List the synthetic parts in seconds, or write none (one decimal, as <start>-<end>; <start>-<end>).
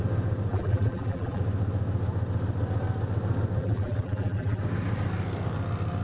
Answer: 0.5-1.4; 3.6-4.6